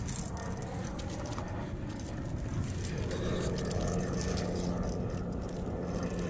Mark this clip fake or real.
real